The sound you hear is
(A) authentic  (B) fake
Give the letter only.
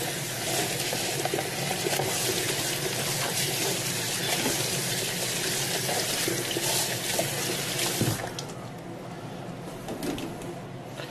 A